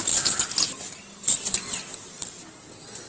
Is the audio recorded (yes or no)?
yes